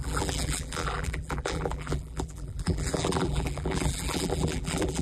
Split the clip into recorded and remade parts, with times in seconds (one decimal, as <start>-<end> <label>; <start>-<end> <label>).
0.0-5.0 remade